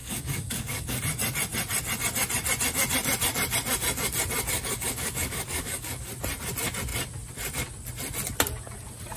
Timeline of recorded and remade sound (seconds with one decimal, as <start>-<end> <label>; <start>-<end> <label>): 0.0-1.0 remade; 1.0-4.5 recorded; 4.5-6.1 remade; 6.1-9.2 recorded